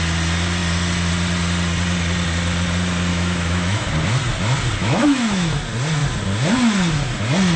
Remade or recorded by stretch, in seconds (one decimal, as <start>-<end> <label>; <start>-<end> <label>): 0.0-3.1 recorded; 3.1-3.9 remade; 3.9-4.8 recorded; 4.8-5.6 remade; 5.6-7.6 recorded